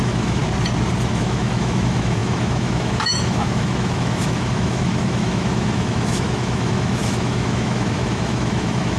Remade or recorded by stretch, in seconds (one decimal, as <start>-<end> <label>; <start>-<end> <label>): 0.0-0.4 remade; 0.4-1.1 recorded; 1.1-9.0 remade